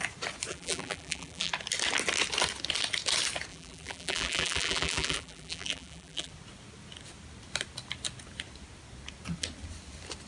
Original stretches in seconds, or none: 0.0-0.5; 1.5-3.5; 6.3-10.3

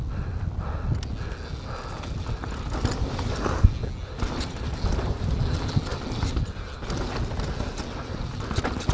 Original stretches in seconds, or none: 0.0-8.9